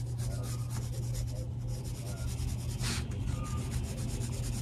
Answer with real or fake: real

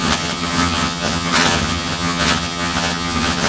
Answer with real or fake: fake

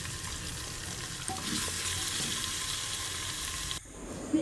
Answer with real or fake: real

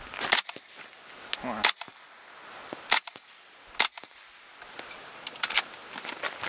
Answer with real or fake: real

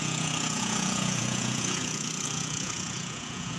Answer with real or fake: fake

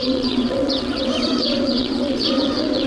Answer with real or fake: fake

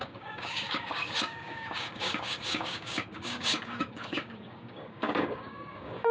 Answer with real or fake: fake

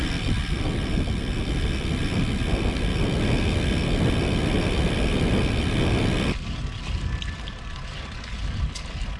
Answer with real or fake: real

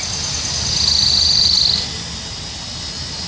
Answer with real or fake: real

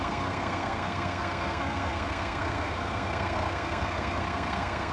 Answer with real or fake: fake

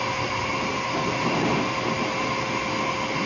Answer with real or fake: real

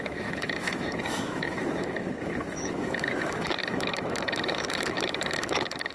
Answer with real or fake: fake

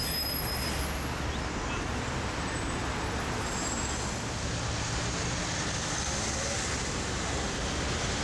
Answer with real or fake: real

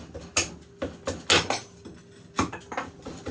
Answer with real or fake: real